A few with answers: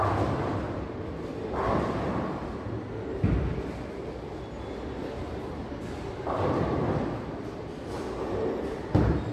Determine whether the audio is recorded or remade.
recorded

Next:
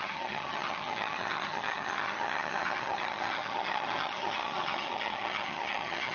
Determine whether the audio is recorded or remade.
remade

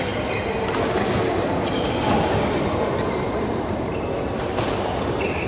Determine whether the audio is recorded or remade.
recorded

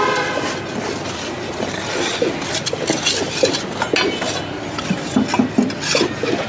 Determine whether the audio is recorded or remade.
recorded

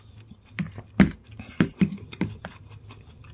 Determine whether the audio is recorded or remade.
recorded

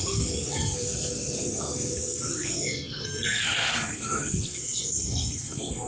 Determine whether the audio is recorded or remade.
remade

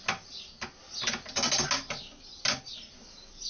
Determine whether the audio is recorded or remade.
recorded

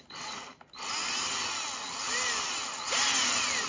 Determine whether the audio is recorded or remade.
recorded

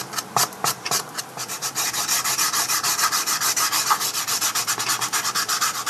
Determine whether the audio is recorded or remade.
remade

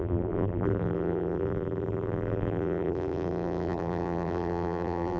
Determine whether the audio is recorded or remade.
remade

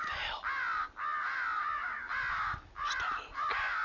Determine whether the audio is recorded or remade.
recorded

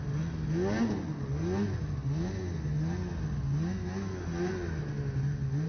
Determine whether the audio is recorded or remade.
recorded